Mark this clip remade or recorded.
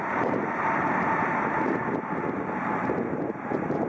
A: recorded